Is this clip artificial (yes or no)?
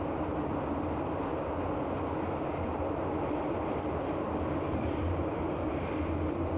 no